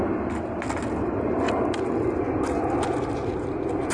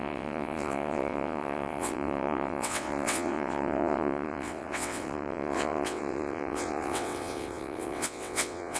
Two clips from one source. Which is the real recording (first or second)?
first